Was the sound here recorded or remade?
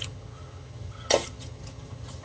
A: remade